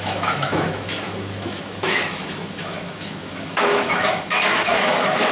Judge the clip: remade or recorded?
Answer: remade